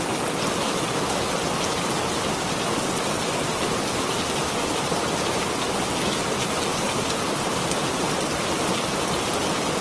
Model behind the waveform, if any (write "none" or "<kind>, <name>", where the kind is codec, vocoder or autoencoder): none